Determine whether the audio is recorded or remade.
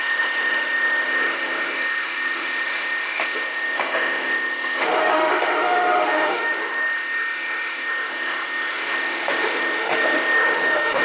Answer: remade